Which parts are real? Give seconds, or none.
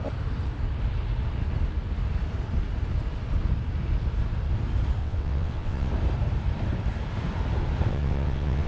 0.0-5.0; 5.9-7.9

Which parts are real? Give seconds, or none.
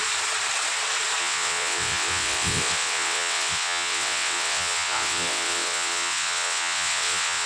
0.0-1.2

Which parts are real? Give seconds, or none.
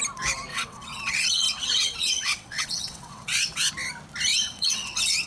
0.0-0.5; 3.7-4.3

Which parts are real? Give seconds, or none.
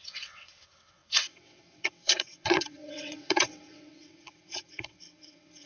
none